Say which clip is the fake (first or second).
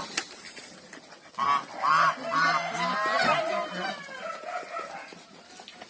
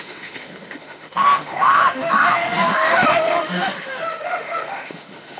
second